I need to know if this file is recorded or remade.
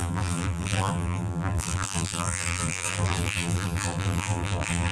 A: remade